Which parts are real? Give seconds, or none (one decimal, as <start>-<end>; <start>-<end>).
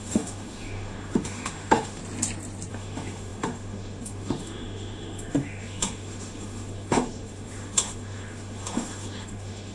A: 2.0-2.7